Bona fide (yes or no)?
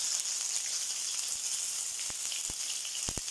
yes